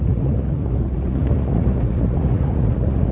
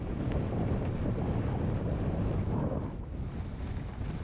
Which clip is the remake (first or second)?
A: first